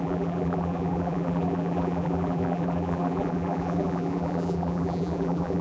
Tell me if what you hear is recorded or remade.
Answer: remade